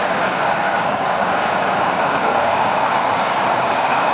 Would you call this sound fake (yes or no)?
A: yes